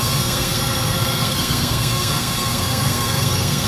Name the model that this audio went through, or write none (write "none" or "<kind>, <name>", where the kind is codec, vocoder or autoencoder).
codec, SNAC